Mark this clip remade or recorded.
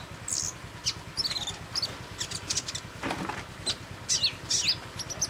recorded